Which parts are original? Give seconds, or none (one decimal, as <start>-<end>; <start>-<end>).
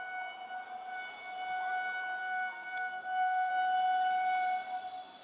0.0-2.2; 3.5-5.2